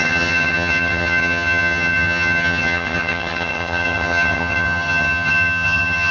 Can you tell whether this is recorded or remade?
remade